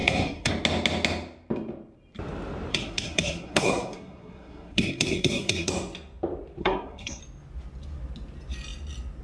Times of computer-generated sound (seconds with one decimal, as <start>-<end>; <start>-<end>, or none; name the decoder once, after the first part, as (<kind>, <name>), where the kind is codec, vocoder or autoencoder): 0.0-0.5 (codec, SNAC); 2.7-5.7; 6.6-7.2